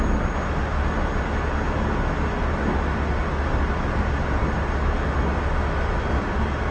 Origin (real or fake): real